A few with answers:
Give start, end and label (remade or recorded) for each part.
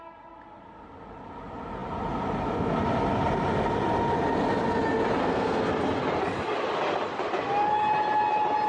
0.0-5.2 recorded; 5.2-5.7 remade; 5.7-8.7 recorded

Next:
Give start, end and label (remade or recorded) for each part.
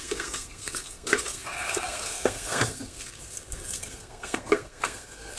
0.0-5.4 remade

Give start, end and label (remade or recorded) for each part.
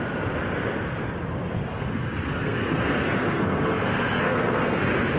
0.0-1.7 recorded; 1.7-4.8 remade; 4.8-5.2 recorded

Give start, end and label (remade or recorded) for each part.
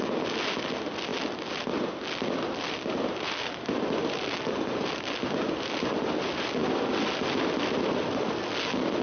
0.0-9.0 recorded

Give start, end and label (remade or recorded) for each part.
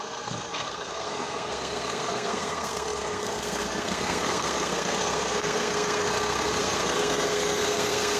0.0-8.2 remade